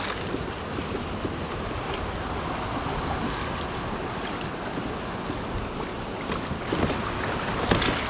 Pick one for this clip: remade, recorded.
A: recorded